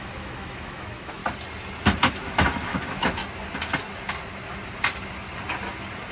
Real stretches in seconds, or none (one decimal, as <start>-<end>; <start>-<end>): 1.2-2.1; 3.2-6.1